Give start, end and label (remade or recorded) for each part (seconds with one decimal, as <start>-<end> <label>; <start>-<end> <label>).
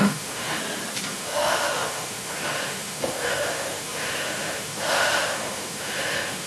0.0-0.6 remade; 0.6-1.1 recorded; 1.1-6.5 remade